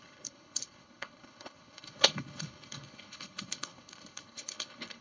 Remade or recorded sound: remade